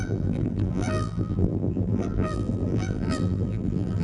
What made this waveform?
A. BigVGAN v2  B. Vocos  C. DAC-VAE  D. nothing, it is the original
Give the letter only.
A